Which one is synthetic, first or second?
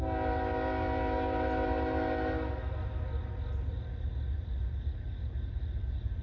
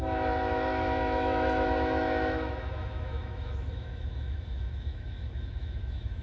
second